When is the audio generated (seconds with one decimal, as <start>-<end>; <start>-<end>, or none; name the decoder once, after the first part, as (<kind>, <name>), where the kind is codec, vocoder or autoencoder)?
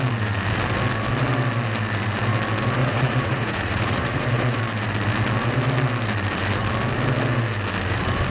2.8-4.6 (vocoder, Vocos)